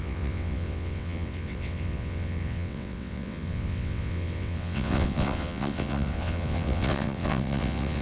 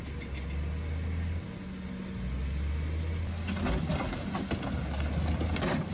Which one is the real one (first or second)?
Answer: second